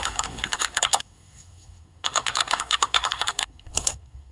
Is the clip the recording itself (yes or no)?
no